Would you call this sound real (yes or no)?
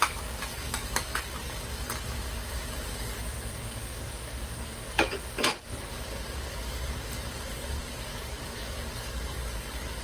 no